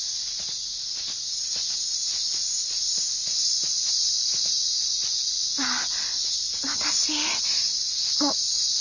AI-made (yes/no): no